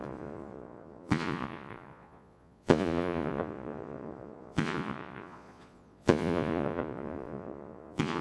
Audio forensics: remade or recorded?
remade